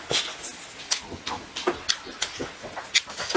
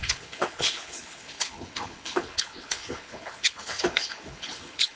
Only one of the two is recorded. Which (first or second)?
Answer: first